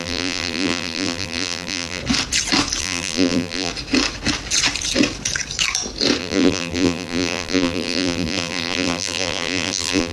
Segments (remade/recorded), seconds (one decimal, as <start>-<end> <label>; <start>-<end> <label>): 0.0-2.0 remade; 2.0-2.8 recorded; 2.8-3.7 remade; 3.7-6.2 recorded; 6.2-10.1 remade